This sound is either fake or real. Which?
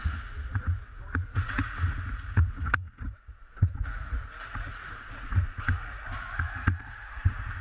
fake